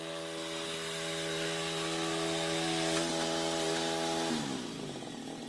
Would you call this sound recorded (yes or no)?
yes